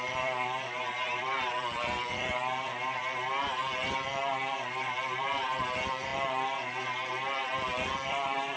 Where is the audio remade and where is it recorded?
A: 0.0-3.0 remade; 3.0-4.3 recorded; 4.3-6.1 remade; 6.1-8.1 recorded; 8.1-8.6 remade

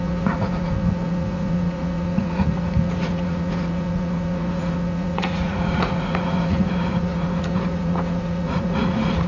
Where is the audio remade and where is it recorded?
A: 0.0-9.3 remade

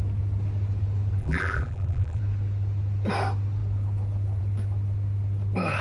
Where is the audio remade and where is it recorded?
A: 0.0-1.2 recorded; 1.2-2.2 remade; 2.2-5.8 recorded

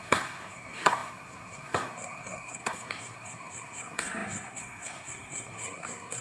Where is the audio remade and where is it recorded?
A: 0.0-6.2 remade

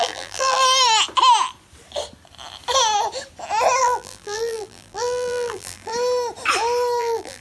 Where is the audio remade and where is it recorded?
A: 0.0-0.6 remade; 0.6-3.8 recorded; 3.8-5.9 remade; 5.9-7.0 recorded; 7.0-7.4 remade

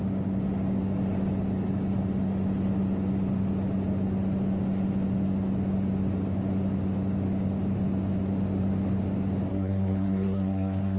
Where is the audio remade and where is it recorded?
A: 0.0-9.5 recorded; 9.5-11.0 remade

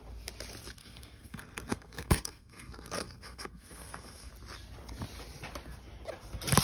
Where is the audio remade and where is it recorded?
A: 0.0-0.8 recorded; 0.8-4.3 remade; 4.3-6.6 recorded

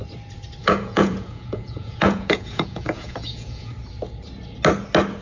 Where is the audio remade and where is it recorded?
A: 0.0-0.6 recorded; 0.6-3.7 remade; 3.7-5.2 recorded